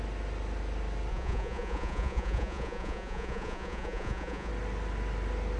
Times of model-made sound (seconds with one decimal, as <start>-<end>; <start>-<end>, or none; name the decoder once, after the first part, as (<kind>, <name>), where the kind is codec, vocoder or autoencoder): 1.1-4.5 (vocoder, Vocos)